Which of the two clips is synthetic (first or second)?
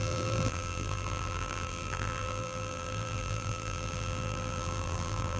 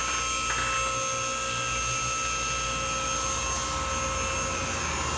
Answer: first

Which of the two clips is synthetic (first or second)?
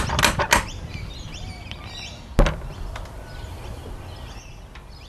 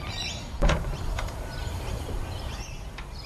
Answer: second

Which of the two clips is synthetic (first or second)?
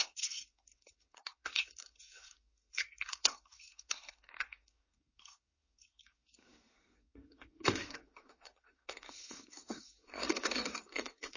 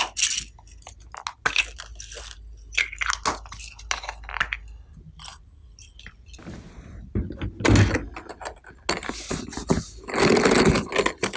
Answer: first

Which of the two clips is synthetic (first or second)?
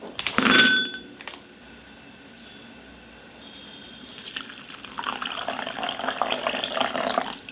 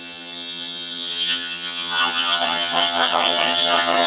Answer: second